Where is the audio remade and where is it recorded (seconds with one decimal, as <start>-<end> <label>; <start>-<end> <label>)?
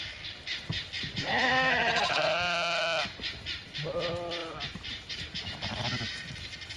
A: 0.0-6.8 recorded